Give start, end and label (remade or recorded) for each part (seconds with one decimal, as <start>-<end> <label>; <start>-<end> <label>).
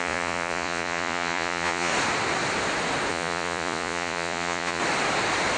0.0-1.9 remade; 1.9-3.1 recorded; 3.1-4.8 remade; 4.8-5.6 recorded